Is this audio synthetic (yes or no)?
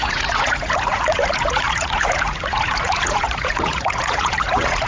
yes